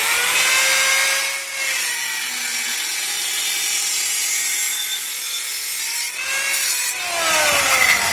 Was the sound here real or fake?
real